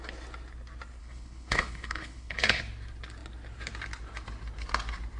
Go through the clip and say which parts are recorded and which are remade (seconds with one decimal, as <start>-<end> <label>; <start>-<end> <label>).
0.0-1.0 recorded; 1.0-2.6 remade; 2.6-5.2 recorded

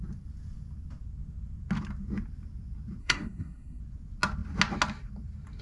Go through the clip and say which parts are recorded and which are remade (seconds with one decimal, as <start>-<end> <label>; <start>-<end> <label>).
0.0-3.0 recorded; 3.0-3.8 remade; 3.8-5.6 recorded